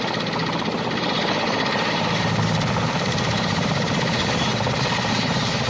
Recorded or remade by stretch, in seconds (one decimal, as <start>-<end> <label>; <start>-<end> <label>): 0.0-5.7 recorded

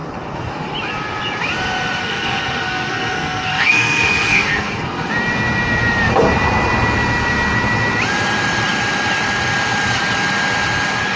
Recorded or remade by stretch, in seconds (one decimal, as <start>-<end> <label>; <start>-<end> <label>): 0.0-2.0 recorded; 2.0-5.1 remade; 5.1-11.2 recorded

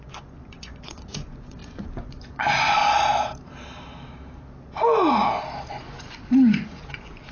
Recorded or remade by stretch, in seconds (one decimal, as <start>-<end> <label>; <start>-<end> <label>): 0.0-2.8 remade; 2.8-5.7 recorded; 5.7-7.3 remade

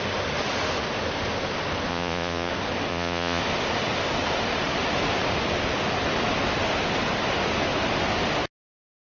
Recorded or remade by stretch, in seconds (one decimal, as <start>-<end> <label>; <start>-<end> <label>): 0.0-1.9 recorded; 1.9-2.5 remade; 2.5-2.9 recorded; 2.9-3.4 remade; 3.4-9.1 recorded

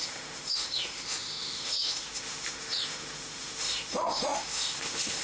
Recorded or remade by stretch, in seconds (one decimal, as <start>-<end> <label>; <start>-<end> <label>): 0.0-5.2 remade